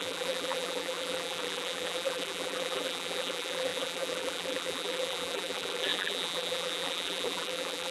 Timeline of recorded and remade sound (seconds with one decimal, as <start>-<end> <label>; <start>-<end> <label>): 0.0-7.9 remade